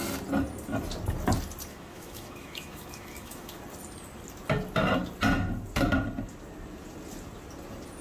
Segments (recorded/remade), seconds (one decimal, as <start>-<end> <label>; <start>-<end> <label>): 0.0-1.7 recorded; 1.7-3.6 remade; 3.6-8.0 recorded